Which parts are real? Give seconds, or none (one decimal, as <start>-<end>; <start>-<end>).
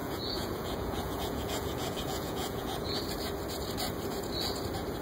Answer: 3.0-5.0